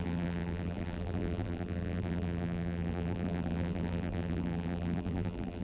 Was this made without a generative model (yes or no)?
no